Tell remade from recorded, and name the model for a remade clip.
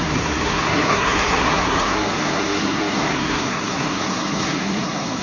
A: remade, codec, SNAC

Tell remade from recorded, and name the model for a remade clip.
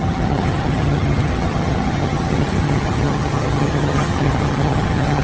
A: remade, vocoder, HiFi-GAN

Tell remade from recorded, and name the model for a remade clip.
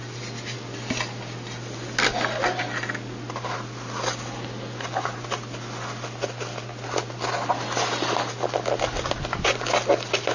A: recorded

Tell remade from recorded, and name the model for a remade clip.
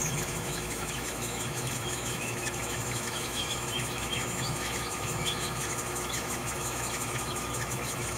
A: remade, autoencoder, DAC-VAE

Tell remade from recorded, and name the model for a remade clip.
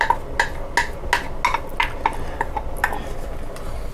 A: recorded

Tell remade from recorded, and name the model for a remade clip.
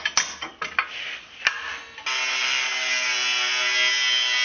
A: recorded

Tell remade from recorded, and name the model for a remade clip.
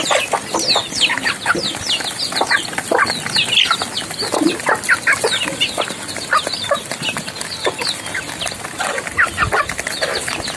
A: recorded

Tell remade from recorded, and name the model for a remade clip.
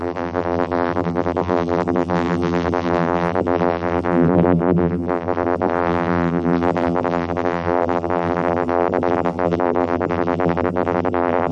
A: remade, vocoder, BigVGAN v2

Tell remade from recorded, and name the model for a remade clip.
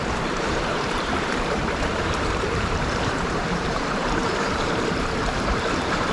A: remade, vocoder, BigVGAN v2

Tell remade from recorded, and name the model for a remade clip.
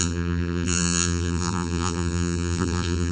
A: remade, vocoder, BigVGAN v2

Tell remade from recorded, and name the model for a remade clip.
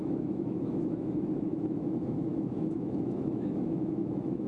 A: remade, autoencoder, DAC-VAE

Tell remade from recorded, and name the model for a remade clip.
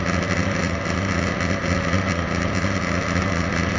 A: recorded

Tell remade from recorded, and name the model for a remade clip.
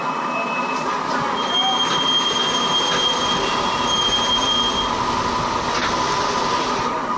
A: recorded